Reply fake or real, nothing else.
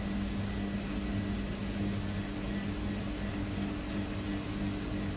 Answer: real